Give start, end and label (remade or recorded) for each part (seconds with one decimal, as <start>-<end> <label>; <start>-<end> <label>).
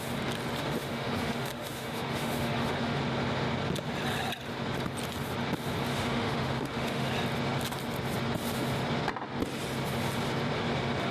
0.0-0.6 recorded; 0.6-3.0 remade; 3.0-5.9 recorded; 5.9-7.1 remade; 7.1-11.1 recorded